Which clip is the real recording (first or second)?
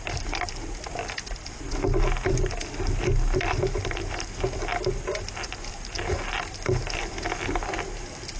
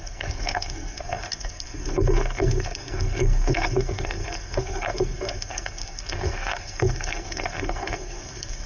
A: first